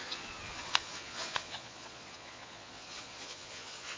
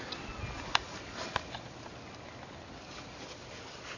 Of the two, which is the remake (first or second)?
first